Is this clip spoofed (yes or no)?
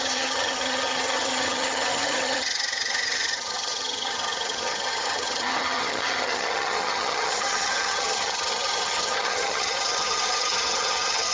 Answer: yes